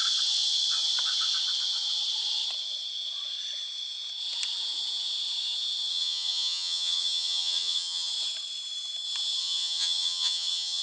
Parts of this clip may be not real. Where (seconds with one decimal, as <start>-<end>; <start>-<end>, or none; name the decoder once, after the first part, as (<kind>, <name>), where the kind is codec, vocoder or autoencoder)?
5.9-8.1 (vocoder, HiFi-GAN); 9.4-10.8

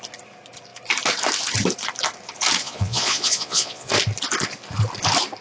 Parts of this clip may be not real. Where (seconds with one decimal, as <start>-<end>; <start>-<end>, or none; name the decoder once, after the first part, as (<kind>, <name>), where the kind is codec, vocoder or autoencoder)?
2.6-3.9 (vocoder, Vocos)

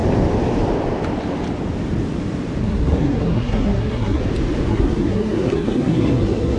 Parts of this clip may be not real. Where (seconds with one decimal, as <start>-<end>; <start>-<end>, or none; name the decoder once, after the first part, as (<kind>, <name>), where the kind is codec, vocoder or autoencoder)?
2.6-4.2 (codec, SNAC); 4.7-6.6

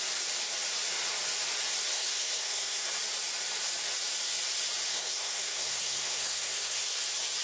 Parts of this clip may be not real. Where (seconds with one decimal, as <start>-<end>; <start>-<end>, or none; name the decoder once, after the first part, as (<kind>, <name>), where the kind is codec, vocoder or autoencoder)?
1.9-2.9 (codec, SNAC); 4.9-7.0